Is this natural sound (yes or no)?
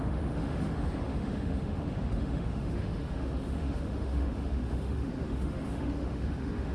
no